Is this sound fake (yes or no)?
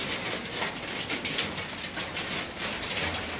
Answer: no